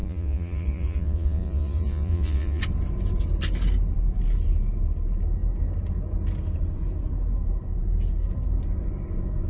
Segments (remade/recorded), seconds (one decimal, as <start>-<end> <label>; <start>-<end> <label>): 0.0-2.6 remade; 2.6-9.5 recorded